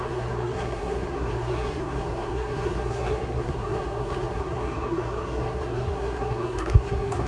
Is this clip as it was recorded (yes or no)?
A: no